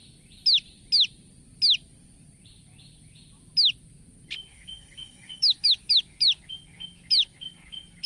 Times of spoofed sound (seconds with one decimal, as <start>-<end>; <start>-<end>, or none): 4.5-6.0